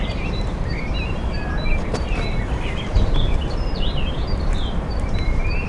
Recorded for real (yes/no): no